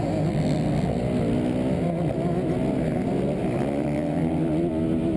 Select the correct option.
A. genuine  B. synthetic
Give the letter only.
A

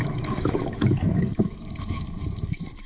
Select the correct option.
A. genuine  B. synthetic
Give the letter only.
B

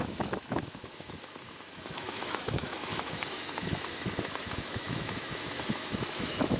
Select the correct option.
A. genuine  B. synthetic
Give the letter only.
B